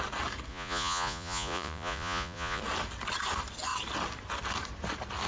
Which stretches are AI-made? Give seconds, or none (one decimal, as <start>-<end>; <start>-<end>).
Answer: 0.5-2.6